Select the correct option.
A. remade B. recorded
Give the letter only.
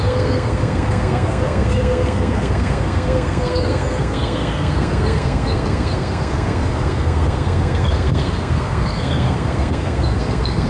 A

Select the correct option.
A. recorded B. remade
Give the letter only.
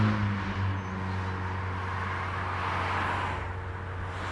A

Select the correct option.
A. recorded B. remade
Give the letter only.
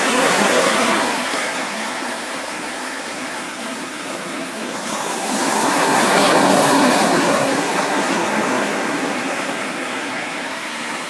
B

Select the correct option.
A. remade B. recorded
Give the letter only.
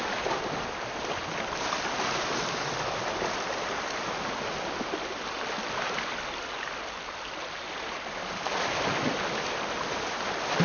B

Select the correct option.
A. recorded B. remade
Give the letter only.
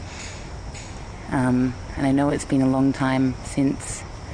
A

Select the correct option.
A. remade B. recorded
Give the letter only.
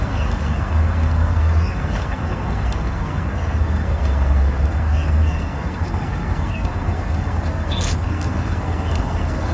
A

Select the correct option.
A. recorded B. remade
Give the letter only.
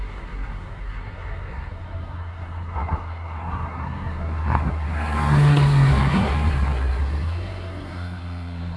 B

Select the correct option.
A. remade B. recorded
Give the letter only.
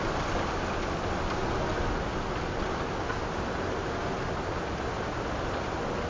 B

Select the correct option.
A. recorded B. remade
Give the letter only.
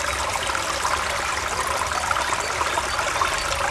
A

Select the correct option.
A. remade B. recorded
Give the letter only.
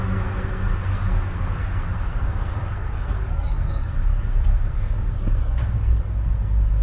A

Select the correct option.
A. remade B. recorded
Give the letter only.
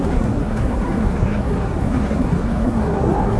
A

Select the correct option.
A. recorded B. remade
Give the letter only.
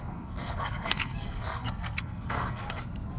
B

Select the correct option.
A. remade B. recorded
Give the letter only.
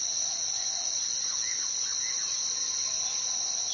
B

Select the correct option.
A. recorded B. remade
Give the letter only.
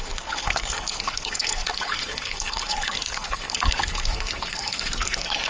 B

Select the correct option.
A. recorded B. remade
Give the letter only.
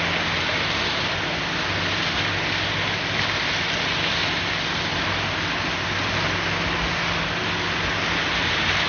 A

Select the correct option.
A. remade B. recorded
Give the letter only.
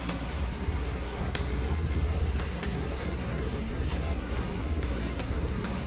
A